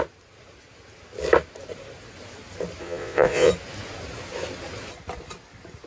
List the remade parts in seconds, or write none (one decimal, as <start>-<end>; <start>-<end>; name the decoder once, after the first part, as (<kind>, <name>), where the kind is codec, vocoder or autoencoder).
2.8-3.5 (vocoder, Vocos)